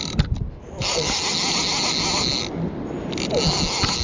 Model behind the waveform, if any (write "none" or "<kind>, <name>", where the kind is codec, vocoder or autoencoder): none